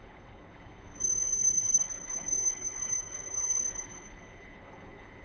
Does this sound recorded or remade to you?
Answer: remade